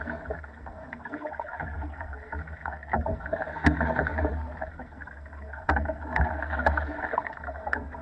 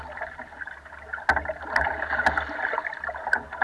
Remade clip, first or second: first